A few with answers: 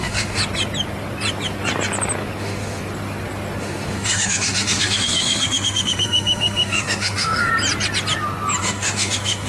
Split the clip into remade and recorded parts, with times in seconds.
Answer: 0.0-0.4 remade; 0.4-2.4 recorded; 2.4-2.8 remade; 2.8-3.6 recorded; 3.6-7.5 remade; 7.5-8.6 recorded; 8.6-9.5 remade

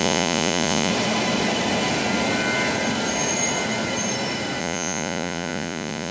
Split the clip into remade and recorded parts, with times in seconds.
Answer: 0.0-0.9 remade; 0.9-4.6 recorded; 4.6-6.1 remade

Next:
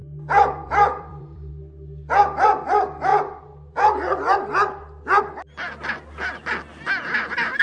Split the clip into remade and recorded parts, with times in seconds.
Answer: 0.0-1.5 remade; 1.5-7.6 recorded